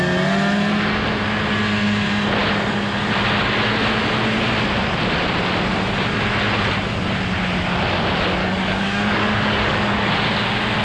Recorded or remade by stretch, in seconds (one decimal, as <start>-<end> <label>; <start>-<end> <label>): 0.0-8.4 recorded; 8.4-10.1 remade; 10.1-10.8 recorded